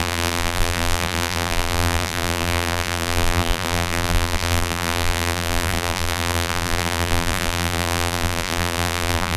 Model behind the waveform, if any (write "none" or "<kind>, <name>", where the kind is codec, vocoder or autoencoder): vocoder, BigVGAN v2